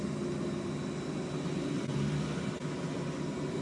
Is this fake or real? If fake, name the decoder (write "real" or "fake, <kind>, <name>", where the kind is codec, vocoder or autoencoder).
real